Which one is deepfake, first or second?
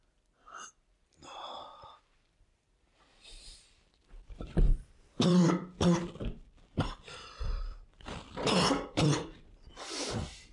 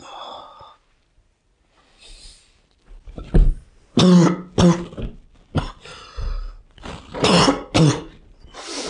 first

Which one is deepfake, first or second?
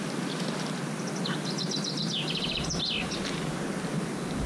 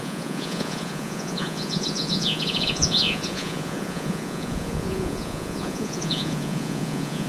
second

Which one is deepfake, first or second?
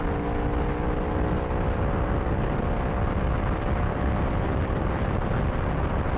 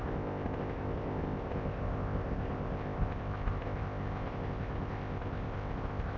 second